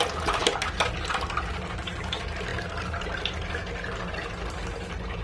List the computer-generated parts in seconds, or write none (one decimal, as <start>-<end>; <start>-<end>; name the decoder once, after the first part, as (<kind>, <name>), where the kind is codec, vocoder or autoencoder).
none